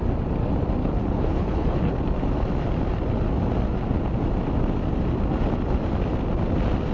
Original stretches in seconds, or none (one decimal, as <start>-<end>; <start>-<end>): 0.0-0.8; 1.9-6.9